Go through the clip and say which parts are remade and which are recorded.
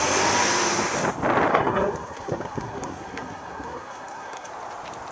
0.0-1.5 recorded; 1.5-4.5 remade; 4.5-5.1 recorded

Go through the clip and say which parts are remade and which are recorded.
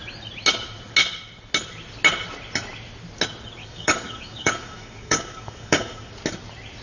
0.0-3.6 recorded; 3.6-6.1 remade; 6.1-6.8 recorded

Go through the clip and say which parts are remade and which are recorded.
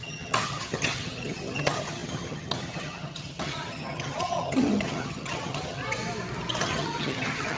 0.0-5.8 remade; 5.8-6.6 recorded; 6.6-7.6 remade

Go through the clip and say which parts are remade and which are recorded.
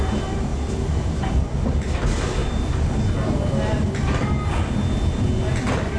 0.0-0.5 recorded; 0.5-1.7 remade; 1.7-6.0 recorded